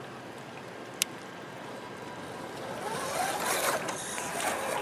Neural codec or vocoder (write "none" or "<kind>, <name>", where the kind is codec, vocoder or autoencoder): none